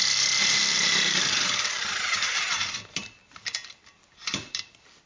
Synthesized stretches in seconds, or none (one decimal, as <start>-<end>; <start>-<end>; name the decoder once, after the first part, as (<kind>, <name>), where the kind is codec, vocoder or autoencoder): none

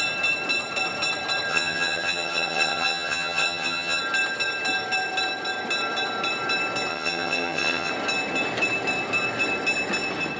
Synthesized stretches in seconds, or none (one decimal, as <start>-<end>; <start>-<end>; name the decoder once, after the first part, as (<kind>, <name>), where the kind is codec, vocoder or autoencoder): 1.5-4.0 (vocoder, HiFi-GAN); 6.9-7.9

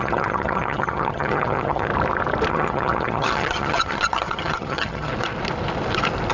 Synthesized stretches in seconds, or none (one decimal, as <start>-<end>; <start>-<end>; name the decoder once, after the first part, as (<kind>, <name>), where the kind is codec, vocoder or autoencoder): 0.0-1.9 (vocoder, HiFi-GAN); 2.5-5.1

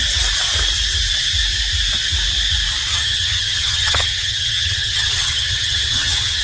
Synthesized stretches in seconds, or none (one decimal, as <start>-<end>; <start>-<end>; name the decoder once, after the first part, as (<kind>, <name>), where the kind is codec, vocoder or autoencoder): 2.9-6.4 (vocoder, HiFi-GAN)

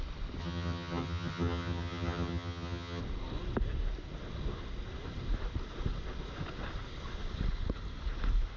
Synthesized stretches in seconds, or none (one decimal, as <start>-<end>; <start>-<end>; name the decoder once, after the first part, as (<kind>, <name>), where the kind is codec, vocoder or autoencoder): 0.4-3.0 (vocoder, HiFi-GAN)

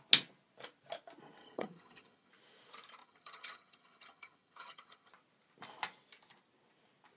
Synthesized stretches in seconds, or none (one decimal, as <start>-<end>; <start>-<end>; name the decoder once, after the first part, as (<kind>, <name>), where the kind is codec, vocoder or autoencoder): 1.4-2.3 (vocoder, HiFi-GAN); 3.0-5.1